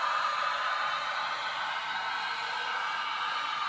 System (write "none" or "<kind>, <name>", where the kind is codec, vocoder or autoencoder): none